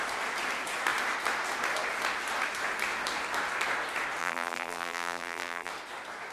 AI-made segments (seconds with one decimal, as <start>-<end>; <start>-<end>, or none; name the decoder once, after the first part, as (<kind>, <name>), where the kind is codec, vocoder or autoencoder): 4.2-5.7 (vocoder, BigVGAN v2)